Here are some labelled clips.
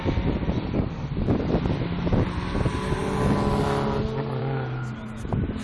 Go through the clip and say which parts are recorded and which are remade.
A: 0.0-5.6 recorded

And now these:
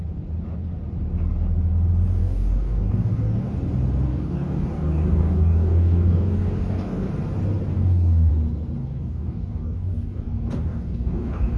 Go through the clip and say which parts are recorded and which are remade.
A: 0.0-2.2 recorded; 2.2-3.5 remade; 3.5-4.1 recorded; 4.1-7.1 remade; 7.1-7.7 recorded; 7.7-8.3 remade; 8.3-8.8 recorded; 8.8-11.6 remade

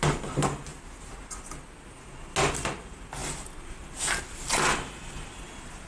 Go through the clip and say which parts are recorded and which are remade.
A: 0.0-5.9 recorded

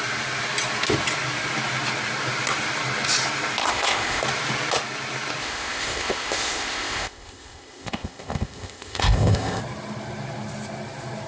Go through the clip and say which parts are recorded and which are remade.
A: 0.0-3.6 recorded; 3.6-4.2 remade; 4.2-5.4 recorded; 5.4-9.6 remade; 9.6-11.3 recorded

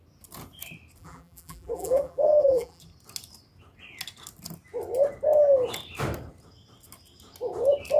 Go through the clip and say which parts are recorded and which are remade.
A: 0.0-1.0 recorded; 1.0-2.8 remade; 2.8-8.0 recorded